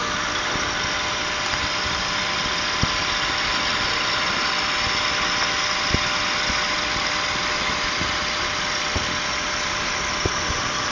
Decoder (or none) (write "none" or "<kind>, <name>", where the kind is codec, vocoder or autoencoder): none